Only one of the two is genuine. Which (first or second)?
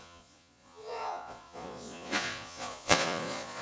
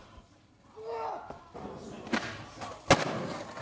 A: second